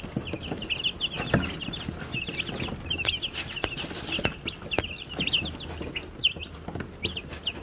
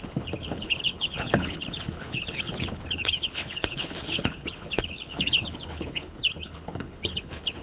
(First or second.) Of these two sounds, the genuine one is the first